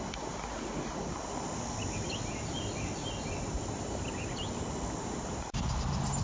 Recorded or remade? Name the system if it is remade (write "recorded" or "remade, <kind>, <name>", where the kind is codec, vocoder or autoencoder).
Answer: recorded